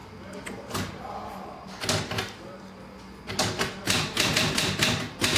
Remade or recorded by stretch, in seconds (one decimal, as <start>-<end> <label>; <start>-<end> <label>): 0.0-5.4 recorded